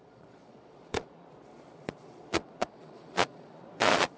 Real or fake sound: fake